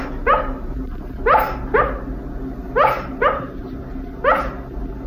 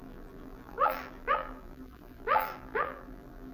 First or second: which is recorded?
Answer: first